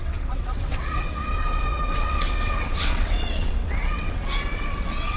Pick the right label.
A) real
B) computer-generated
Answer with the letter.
B